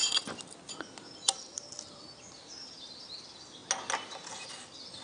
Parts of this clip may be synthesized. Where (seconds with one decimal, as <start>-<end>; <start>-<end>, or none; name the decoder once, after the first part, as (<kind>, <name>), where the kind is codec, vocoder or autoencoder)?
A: none